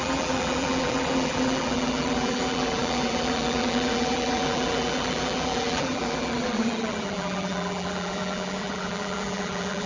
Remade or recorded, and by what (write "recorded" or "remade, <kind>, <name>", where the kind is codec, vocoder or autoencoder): remade, vocoder, BigVGAN v2